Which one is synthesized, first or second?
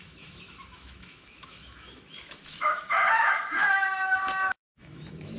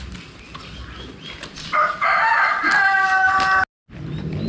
first